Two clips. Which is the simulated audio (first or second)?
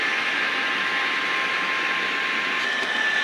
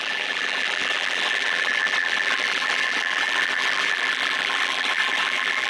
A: second